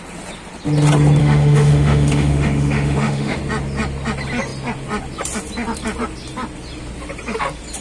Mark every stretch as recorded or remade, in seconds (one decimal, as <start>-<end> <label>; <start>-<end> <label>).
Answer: 0.0-1.2 recorded; 1.2-3.4 remade; 3.4-7.8 recorded